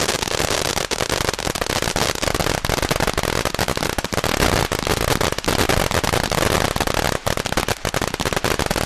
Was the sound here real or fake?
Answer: real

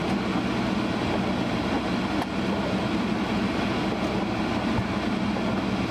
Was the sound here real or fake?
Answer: real